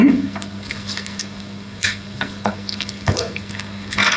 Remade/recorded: remade